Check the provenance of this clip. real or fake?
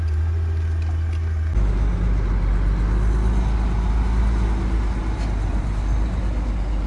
real